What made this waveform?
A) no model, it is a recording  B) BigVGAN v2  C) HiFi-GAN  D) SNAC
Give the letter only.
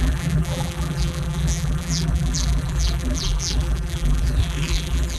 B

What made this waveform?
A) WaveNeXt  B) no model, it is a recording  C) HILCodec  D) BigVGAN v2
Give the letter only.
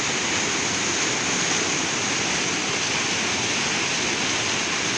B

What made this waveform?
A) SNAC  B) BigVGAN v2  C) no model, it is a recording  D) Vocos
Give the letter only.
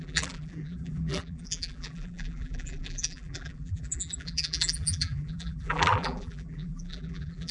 B